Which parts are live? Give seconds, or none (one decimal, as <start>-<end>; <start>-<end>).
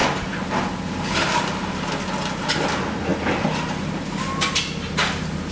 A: 0.0-5.5